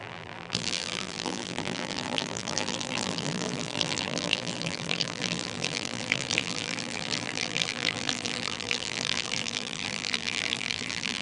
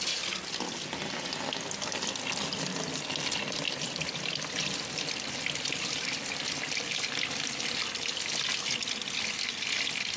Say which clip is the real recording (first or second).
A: second